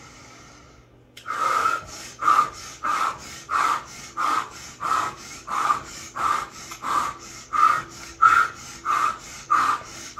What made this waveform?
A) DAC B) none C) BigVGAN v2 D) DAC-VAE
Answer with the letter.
A